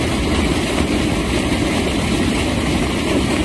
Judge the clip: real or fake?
real